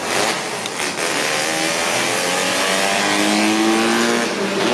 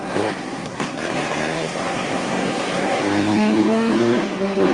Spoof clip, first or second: second